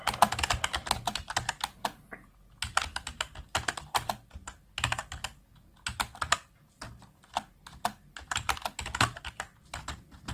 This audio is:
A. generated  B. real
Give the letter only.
B